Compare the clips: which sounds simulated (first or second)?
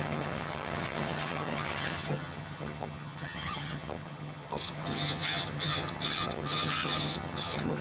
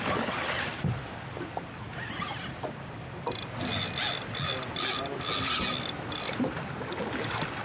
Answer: first